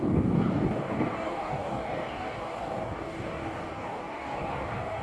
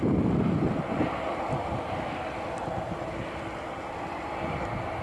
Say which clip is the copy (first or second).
first